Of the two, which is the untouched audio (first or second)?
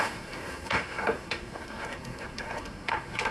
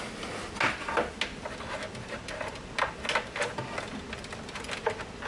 second